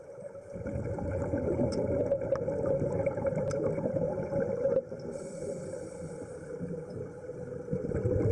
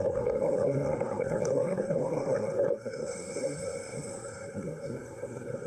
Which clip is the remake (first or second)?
second